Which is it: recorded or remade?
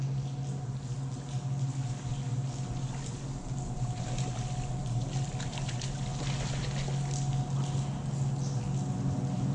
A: recorded